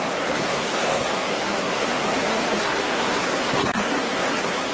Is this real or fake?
fake